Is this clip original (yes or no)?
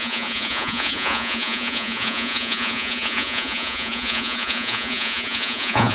no